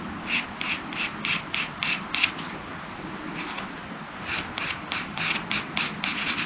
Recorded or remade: recorded